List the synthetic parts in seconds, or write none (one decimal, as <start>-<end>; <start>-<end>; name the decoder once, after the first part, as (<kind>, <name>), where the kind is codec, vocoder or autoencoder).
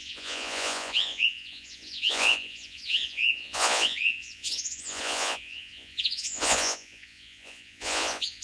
0.0-8.4 (vocoder, Vocos)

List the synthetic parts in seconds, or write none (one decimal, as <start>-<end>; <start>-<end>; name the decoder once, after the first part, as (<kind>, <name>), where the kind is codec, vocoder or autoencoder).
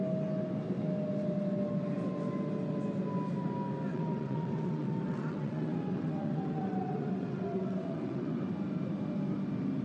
3.9-8.5 (vocoder, WaveNeXt)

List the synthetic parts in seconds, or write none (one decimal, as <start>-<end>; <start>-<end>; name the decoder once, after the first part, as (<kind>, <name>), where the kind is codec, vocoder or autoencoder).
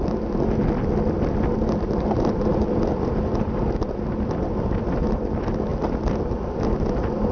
none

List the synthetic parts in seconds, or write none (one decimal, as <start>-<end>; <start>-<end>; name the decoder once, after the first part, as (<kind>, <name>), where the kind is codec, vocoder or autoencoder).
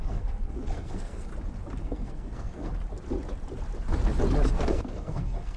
0.0-1.3 (codec, SNAC); 1.8-2.7; 4.5-5.6